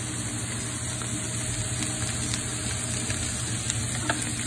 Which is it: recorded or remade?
recorded